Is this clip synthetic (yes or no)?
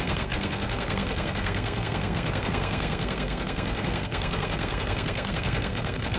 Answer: yes